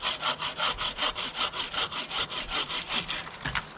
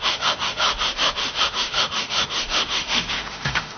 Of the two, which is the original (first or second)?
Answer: first